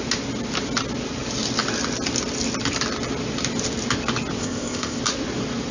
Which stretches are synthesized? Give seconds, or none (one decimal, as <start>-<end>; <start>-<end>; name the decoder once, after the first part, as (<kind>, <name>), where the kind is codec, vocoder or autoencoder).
4.4-5.0 (codec, ZipCodec)